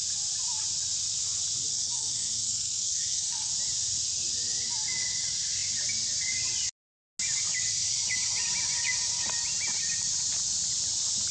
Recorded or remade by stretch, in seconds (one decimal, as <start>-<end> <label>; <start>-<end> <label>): 0.0-1.7 recorded; 1.7-3.5 remade; 3.5-11.3 recorded